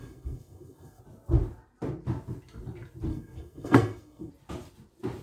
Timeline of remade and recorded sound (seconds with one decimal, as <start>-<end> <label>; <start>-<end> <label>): 0.0-1.0 remade; 1.0-3.1 recorded; 3.1-4.3 remade; 4.3-5.2 recorded